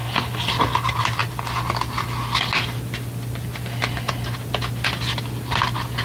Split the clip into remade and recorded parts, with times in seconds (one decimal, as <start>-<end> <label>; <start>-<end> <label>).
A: 0.0-6.0 recorded